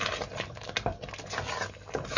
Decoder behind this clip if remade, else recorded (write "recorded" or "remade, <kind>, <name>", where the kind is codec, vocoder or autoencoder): recorded